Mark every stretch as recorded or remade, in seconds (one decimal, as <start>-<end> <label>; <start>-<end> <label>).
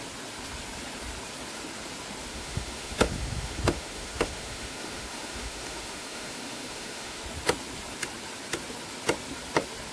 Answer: 0.0-2.3 recorded; 2.3-7.2 remade; 7.2-9.9 recorded